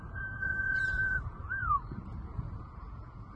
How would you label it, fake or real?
fake